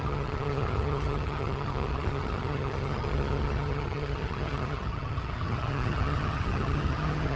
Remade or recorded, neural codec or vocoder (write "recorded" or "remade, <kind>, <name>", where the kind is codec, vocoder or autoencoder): remade, vocoder, HiFi-GAN